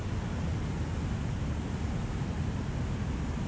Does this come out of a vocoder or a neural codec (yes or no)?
no